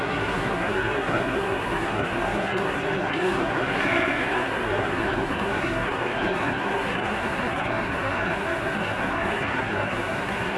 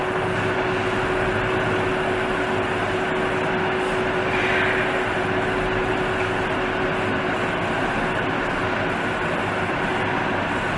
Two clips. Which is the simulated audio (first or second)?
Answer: first